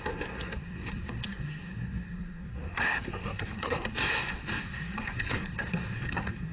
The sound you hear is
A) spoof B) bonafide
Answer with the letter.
A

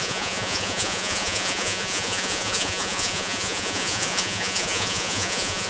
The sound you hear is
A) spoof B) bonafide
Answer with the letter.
A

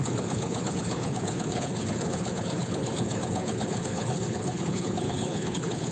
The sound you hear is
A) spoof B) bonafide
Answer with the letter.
A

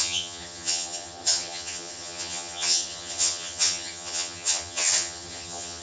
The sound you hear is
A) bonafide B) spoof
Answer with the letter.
B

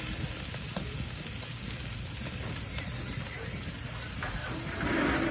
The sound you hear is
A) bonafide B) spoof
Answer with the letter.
A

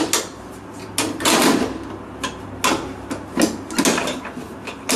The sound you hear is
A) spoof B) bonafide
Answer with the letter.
B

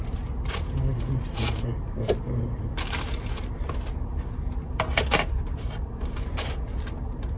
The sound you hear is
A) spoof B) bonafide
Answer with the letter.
A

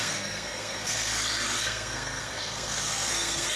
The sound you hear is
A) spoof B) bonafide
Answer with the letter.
A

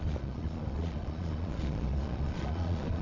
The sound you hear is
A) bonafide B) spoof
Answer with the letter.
B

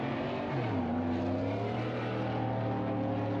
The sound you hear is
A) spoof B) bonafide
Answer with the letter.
B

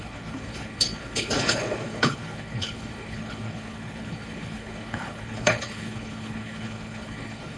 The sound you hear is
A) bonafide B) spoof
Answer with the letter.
B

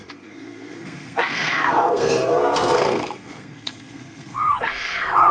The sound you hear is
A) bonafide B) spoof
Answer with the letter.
B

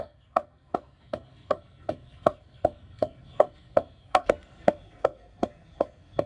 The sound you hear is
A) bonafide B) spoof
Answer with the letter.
B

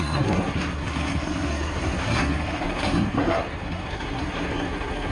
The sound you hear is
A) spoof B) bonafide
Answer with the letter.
A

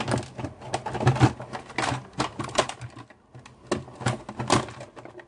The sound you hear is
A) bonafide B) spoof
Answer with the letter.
A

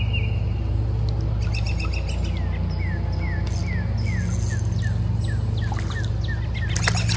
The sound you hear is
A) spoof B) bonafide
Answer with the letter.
B